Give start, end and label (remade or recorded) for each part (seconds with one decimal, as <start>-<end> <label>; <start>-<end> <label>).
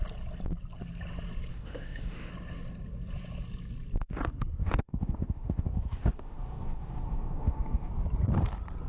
0.0-1.5 recorded; 1.5-2.3 remade; 2.3-4.6 recorded; 4.6-7.9 remade; 7.9-8.9 recorded